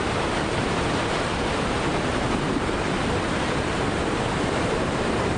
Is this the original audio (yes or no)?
no